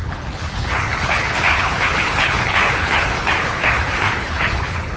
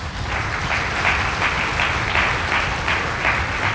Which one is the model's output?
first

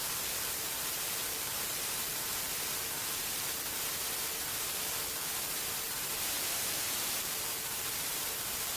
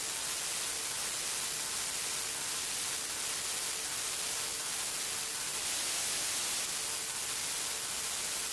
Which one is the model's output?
first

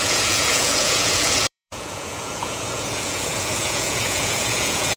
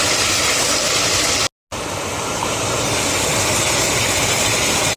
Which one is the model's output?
first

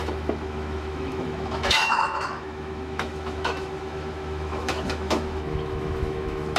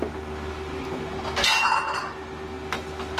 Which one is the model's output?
first